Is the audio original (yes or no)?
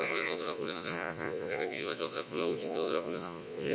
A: no